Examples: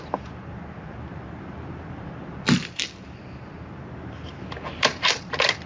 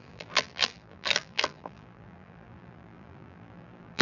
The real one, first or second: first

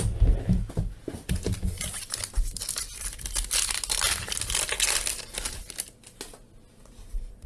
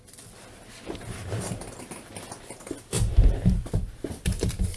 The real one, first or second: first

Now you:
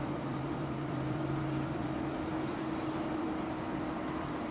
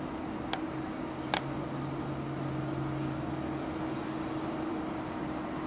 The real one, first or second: second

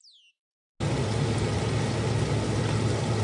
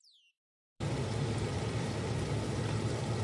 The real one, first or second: first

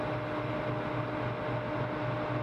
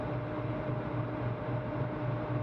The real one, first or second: first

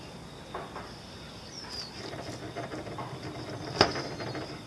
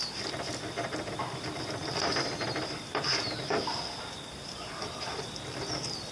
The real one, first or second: first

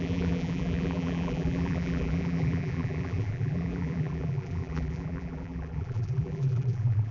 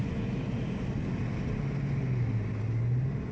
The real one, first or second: second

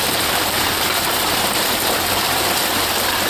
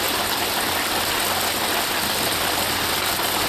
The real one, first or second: second